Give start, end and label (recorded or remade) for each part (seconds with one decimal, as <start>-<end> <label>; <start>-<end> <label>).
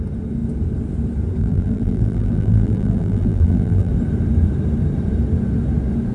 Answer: 0.0-1.4 recorded; 1.4-3.9 remade; 3.9-6.1 recorded